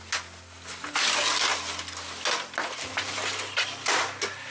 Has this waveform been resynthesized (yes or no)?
no